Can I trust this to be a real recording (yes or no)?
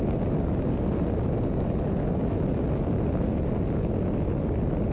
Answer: yes